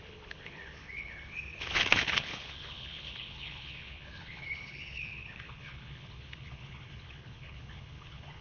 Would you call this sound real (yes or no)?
no